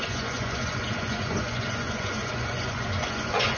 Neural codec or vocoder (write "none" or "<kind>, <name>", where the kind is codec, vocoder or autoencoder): vocoder, Vocos